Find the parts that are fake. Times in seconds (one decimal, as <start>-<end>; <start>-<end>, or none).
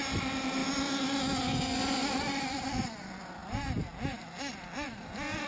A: 1.8-2.7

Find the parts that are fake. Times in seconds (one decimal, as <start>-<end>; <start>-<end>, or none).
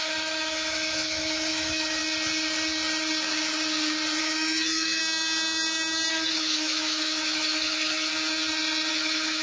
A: 0.0-2.0; 4.2-5.0; 6.1-8.1; 8.9-9.4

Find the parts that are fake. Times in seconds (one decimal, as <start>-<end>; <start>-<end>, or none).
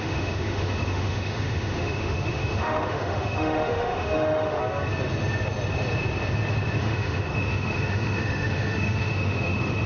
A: 0.0-4.6; 6.8-9.9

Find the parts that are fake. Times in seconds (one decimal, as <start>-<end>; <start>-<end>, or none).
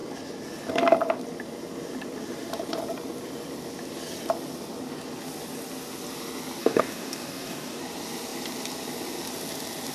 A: 6.6-7.8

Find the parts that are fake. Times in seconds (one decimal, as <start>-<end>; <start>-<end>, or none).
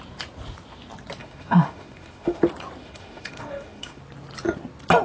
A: 1.2-2.4; 2.8-4.0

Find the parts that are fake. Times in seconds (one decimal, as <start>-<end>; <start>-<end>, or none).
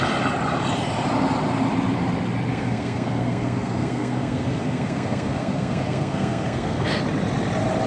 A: 2.5-7.0